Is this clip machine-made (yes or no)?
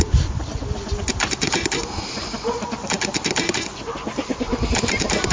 no